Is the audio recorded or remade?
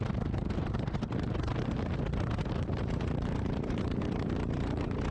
remade